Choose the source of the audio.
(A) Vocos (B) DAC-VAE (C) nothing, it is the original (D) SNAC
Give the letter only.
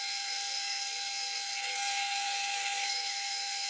D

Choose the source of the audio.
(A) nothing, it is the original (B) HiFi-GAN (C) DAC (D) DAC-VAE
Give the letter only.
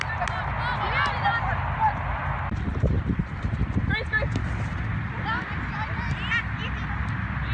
A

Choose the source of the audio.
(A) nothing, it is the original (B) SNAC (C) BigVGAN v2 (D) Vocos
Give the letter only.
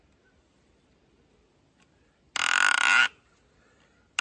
A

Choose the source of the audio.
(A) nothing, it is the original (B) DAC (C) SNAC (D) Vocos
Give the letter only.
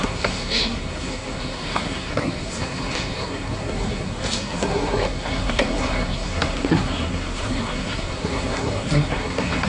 C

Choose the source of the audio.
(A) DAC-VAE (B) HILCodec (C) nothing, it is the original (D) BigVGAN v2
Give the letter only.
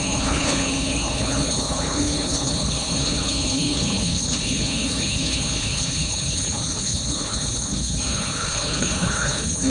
B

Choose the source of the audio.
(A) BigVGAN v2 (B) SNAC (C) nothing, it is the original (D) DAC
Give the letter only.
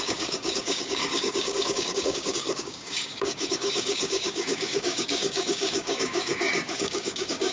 D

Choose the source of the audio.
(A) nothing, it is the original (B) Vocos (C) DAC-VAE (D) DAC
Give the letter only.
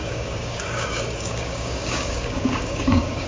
D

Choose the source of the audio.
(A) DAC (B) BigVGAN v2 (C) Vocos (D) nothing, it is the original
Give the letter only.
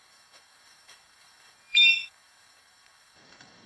A